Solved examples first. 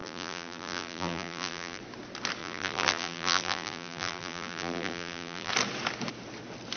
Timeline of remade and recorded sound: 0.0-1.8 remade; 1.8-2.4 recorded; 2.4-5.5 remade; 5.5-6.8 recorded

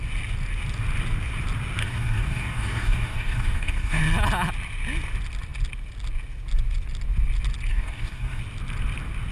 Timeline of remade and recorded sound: 0.0-1.8 recorded; 1.8-4.0 remade; 4.0-7.7 recorded; 7.7-8.4 remade; 8.4-9.3 recorded

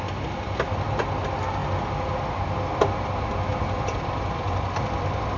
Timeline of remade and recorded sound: 0.0-5.4 recorded